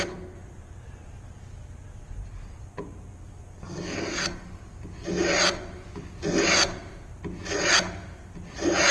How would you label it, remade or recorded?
recorded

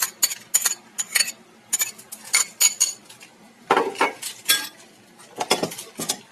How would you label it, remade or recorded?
recorded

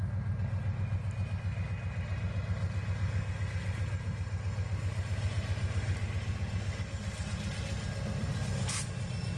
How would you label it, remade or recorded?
recorded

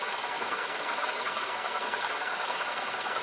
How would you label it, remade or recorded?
remade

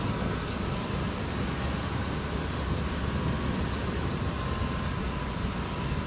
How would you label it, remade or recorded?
recorded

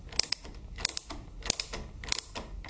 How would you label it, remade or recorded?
recorded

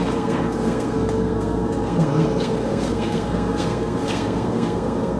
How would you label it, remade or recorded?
remade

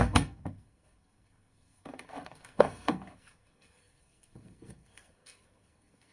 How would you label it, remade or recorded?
remade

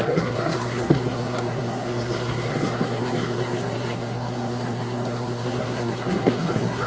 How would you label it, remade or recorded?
remade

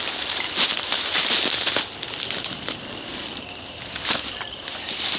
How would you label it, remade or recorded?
recorded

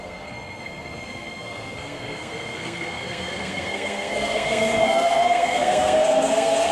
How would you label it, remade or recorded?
remade